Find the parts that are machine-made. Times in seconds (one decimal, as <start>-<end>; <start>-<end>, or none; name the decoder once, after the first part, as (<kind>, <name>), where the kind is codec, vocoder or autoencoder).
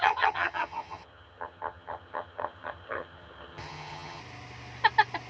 0.0-4.2 (vocoder, HiFi-GAN)